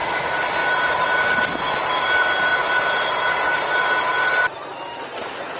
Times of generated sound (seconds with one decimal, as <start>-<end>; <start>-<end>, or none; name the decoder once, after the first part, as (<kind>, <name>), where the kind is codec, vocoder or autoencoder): 0.0-0.6 (vocoder, BigVGAN v2); 1.9-5.6